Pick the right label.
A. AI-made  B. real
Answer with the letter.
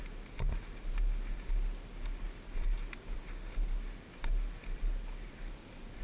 B